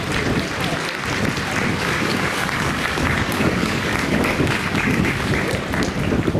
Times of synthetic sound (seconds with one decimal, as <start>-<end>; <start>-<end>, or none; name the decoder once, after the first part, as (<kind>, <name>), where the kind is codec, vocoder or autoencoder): 1.7-5.5 (codec, DAC)